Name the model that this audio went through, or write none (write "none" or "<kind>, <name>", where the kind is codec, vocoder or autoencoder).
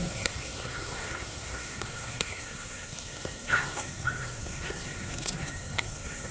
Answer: codec, SNAC